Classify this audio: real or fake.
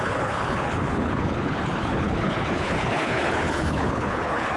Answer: fake